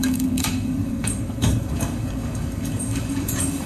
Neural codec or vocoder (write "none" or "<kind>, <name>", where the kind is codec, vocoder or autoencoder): codec, DAC